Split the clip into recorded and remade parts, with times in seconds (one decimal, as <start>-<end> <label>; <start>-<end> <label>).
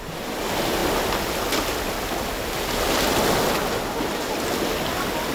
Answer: 0.0-5.3 recorded